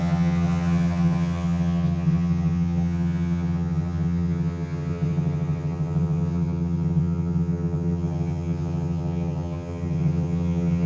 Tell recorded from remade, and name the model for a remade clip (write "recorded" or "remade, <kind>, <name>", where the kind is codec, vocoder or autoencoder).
remade, vocoder, HiFi-GAN